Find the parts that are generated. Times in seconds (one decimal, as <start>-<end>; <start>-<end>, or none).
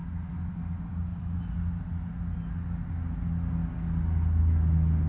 none